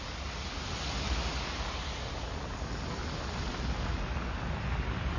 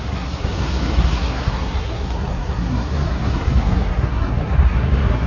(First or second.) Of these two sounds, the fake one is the second